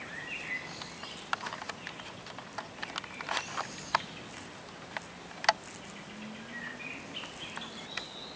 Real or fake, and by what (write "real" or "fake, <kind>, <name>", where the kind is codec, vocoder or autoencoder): real